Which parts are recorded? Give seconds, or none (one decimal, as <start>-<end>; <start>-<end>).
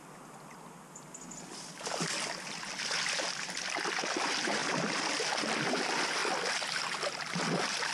0.0-3.2; 6.2-7.9